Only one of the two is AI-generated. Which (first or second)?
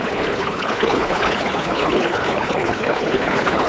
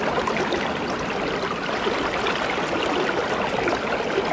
first